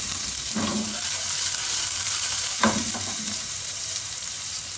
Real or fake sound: fake